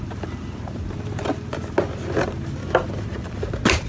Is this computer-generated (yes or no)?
no